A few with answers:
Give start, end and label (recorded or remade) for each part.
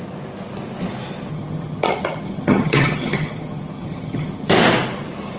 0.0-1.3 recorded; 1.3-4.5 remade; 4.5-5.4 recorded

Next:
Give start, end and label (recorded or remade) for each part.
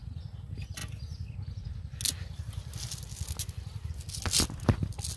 0.0-5.2 recorded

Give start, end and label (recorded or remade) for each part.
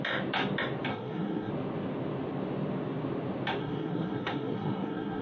0.0-0.9 recorded; 0.9-1.5 remade; 1.5-3.6 recorded; 3.6-5.2 remade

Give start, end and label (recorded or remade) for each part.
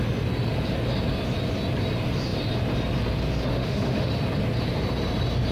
0.0-3.5 recorded; 3.5-4.1 remade; 4.1-5.5 recorded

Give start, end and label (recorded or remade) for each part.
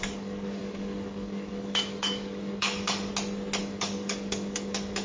0.0-3.1 remade; 3.1-3.6 recorded; 3.6-5.0 remade